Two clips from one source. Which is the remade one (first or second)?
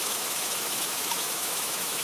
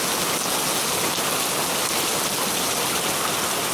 first